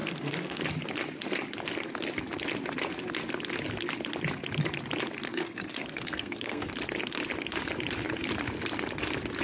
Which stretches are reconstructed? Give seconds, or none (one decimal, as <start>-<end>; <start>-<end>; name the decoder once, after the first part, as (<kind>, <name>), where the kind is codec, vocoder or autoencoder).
0.0-0.6 (codec, SNAC); 5.3-6.7